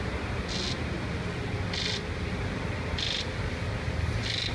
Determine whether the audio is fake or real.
real